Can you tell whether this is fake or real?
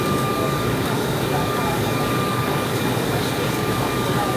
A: fake